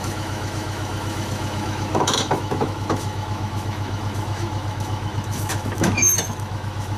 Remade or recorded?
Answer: remade